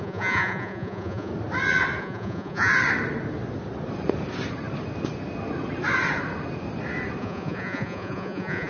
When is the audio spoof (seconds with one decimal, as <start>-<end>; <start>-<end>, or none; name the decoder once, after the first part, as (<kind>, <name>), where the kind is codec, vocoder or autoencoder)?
0.0-1.3 (vocoder, Vocos); 2.0-2.7; 7.2-8.7